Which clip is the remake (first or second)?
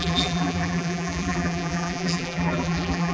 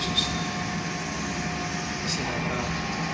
first